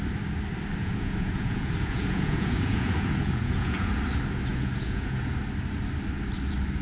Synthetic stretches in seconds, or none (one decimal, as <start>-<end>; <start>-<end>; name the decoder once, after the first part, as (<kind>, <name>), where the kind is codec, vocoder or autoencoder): 0.8-3.9 (vocoder, Vocos); 4.5-5.4